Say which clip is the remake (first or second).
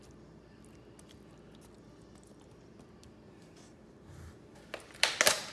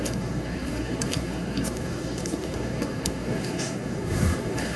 second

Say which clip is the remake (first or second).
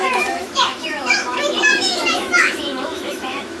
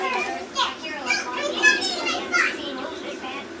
first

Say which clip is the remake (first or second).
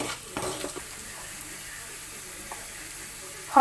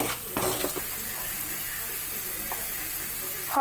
first